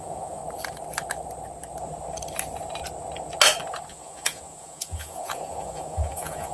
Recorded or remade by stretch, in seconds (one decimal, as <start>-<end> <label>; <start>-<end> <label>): 0.0-0.4 remade; 0.4-3.9 recorded; 3.9-6.5 remade